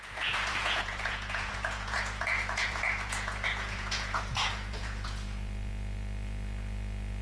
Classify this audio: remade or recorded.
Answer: remade